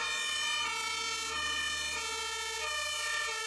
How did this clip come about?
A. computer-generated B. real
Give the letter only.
B